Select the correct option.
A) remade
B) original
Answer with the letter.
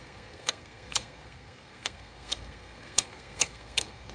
A